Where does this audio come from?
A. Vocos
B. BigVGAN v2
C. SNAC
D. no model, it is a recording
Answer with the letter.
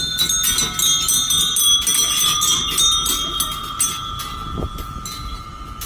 D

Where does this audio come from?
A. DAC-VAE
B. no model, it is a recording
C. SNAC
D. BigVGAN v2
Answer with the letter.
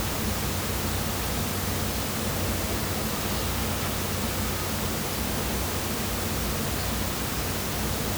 B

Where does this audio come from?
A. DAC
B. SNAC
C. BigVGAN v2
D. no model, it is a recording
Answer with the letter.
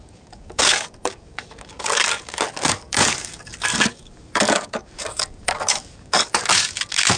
A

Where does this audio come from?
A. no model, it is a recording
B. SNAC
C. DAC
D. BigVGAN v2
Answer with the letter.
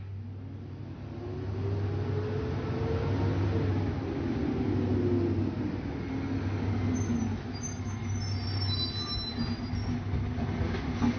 A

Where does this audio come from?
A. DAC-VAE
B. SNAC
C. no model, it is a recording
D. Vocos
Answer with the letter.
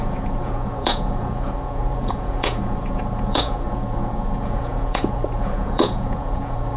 D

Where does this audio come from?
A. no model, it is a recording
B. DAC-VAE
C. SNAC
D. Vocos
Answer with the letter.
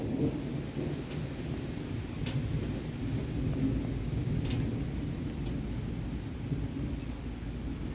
A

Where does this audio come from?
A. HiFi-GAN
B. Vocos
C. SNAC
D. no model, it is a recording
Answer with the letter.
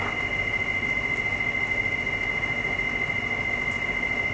D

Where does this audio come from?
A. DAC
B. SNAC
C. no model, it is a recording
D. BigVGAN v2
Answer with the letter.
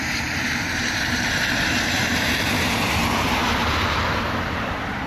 D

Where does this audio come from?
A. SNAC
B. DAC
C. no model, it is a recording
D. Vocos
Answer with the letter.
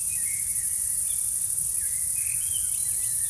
C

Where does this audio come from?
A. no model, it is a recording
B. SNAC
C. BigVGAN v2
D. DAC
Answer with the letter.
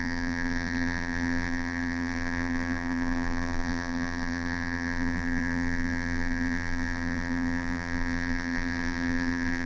C